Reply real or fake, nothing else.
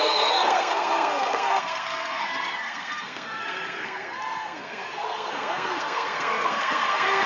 fake